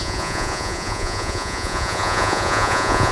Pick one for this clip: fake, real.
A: fake